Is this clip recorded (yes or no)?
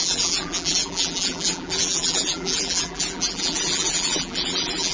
no